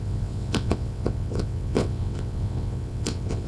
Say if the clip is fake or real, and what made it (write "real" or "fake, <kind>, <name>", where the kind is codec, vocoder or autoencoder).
fake, vocoder, WaveNeXt